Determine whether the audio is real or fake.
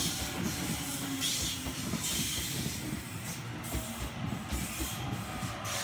real